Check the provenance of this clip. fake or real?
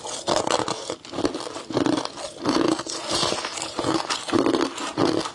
real